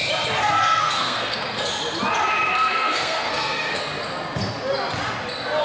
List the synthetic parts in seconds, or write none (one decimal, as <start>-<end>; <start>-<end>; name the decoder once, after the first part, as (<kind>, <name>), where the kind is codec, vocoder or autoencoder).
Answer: 0.4-1.6 (codec, SNAC); 2.5-3.8